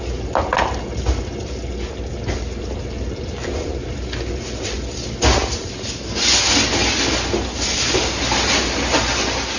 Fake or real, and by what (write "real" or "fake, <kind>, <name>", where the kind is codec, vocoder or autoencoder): real